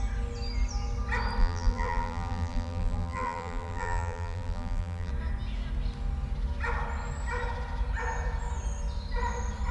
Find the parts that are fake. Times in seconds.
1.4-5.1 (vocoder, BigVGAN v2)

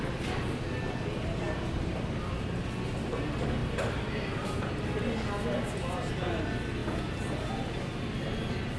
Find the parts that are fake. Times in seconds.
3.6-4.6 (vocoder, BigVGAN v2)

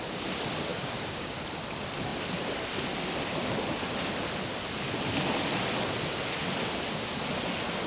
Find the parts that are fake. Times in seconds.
0.7-1.4 (codec, DAC)

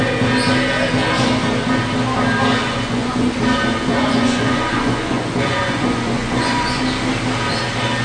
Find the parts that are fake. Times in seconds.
2.6-3.3 (vocoder, Vocos); 3.9-6.8

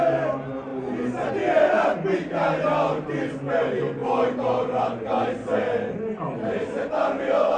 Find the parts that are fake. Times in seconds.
none

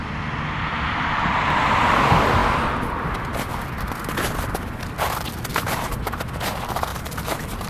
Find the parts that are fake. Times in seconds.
5.5-6.2 (vocoder, BigVGAN v2); 6.9-7.7

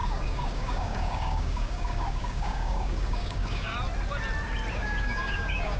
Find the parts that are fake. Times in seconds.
0.0-3.7 (codec, DAC); 4.7-5.8